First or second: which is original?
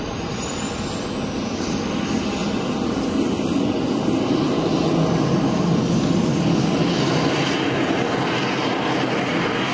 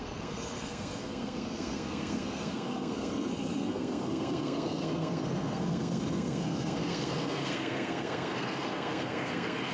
first